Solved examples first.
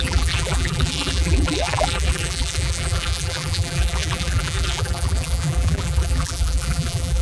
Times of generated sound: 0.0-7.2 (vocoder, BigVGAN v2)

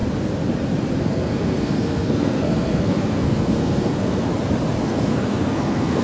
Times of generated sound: 1.0-4.3 (codec, SNAC); 4.8-6.0

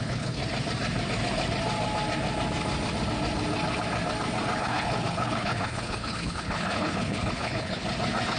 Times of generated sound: 0.0-0.4 (codec, HILCodec); 4.6-7.8

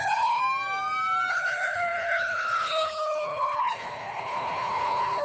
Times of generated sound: 0.0-0.4 (codec, HILCodec); 1.3-5.2

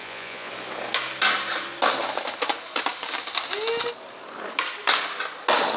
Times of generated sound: 0.0-0.5 (vocoder, Vocos)